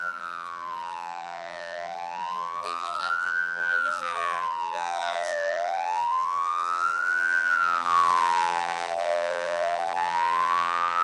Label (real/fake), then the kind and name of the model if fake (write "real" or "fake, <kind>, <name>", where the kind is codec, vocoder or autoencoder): fake, vocoder, BigVGAN v2